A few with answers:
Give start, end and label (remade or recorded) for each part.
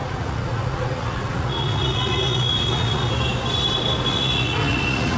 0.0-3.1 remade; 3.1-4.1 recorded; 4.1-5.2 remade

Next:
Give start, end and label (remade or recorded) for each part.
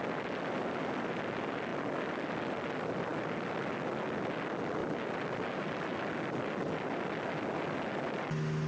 0.0-8.7 recorded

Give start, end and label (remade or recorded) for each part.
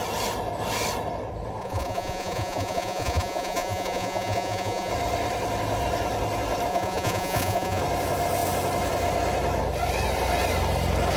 0.0-1.6 recorded; 1.6-4.9 remade; 4.9-6.7 recorded; 6.7-7.8 remade; 7.8-11.2 recorded